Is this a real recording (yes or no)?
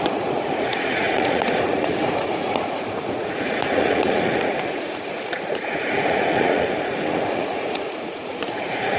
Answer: no